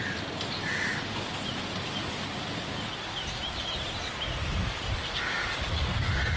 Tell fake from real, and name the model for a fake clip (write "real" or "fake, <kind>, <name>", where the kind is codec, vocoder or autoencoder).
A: real